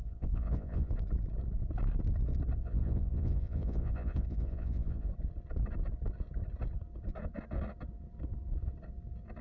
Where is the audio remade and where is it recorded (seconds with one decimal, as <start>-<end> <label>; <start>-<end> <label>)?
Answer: 0.0-0.9 remade; 0.9-2.6 recorded; 2.6-5.1 remade; 5.1-9.4 recorded